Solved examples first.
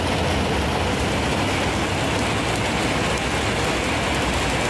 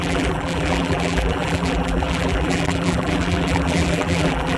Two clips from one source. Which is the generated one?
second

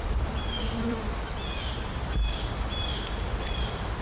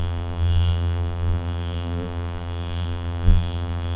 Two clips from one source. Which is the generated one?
second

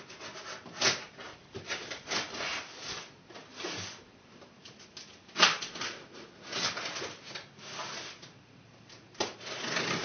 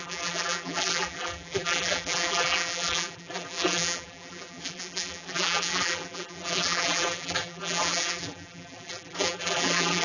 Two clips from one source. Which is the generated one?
second